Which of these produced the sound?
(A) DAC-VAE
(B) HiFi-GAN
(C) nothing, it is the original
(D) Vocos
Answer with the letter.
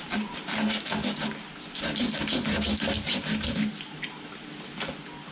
C